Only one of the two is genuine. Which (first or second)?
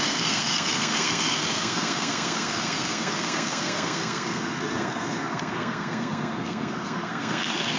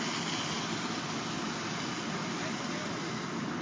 second